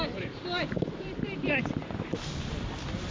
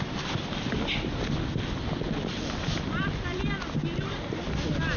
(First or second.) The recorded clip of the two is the second